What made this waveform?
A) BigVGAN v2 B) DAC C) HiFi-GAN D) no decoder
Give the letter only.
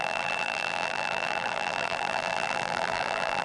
A